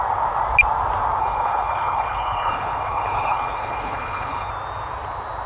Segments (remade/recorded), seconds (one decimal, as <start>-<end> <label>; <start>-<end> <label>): 0.0-1.2 recorded; 1.2-4.5 remade; 4.5-5.5 recorded